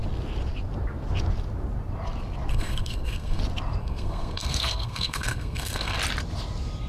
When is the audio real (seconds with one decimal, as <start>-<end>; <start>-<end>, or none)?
0.0-2.5; 3.4-3.8; 6.0-6.9